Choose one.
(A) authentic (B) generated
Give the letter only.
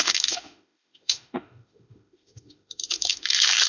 B